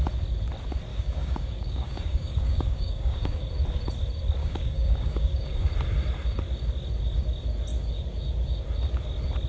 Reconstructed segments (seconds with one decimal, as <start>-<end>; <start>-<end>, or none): 0.9-3.4; 4.4-5.7